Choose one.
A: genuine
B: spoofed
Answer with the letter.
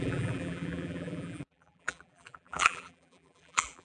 B